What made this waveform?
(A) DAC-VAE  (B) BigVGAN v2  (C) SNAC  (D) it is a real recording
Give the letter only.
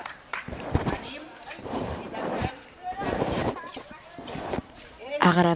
B